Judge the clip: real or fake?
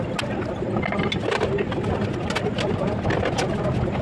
real